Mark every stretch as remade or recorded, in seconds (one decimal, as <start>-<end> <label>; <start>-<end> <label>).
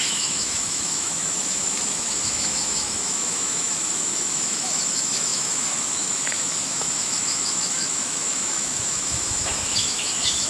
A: 0.0-10.5 remade